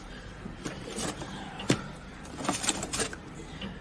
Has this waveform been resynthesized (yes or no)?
no